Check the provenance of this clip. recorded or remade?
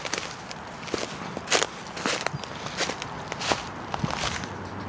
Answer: recorded